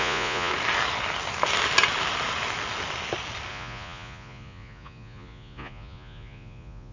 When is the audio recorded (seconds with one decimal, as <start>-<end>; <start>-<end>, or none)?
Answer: 0.5-3.5